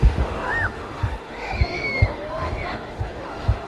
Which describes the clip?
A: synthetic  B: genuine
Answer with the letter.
A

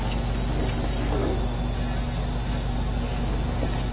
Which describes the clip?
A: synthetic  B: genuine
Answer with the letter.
B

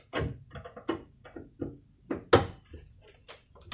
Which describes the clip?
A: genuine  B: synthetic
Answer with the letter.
A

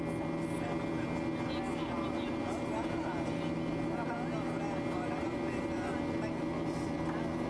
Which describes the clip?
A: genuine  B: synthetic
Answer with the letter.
A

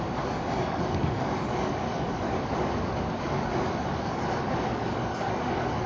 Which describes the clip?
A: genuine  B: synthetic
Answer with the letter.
B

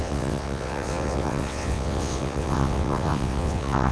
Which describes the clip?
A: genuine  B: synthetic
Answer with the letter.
B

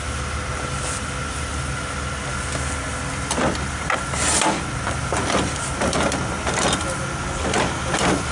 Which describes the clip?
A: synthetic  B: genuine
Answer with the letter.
B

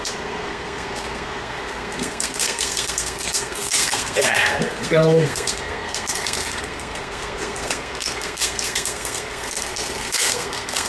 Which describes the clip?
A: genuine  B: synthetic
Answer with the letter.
B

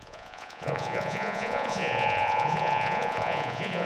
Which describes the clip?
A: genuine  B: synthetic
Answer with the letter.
B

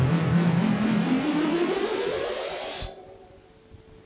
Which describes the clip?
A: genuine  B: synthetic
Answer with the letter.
A